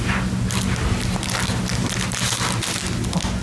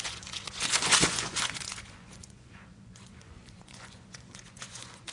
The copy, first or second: second